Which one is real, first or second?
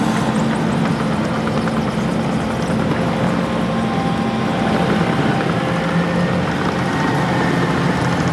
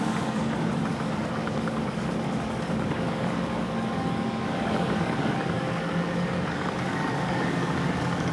first